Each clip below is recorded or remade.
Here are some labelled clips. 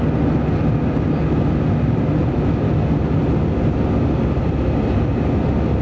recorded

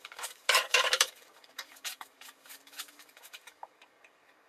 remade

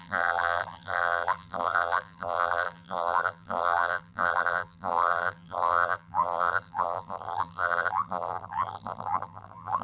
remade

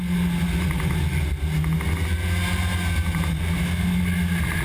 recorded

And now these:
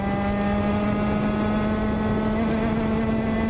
recorded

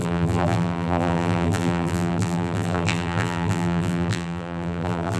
remade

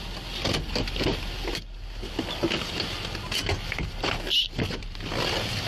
recorded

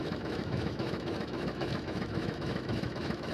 remade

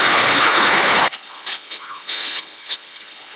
remade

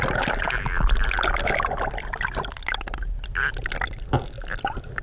recorded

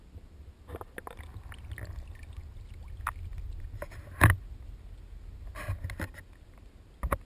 recorded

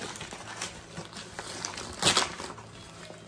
recorded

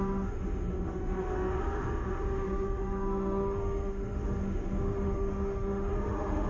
remade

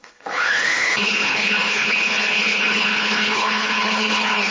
remade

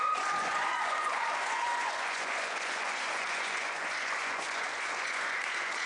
remade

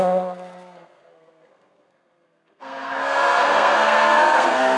remade